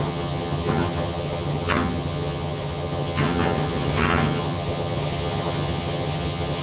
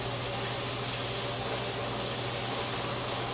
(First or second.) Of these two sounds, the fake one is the first